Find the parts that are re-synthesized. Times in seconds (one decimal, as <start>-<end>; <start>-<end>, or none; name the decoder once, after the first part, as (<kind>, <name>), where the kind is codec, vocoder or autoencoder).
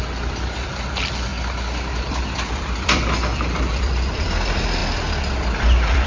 0.0-1.3 (vocoder, BigVGAN v2); 1.9-6.1